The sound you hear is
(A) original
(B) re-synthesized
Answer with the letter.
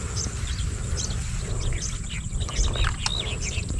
A